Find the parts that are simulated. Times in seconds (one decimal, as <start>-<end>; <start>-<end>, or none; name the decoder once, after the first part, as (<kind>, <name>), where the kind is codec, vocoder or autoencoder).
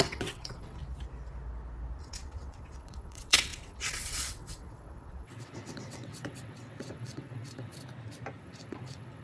0.0-0.8 (vocoder, WaveNeXt); 2.0-7.7; 8.4-9.2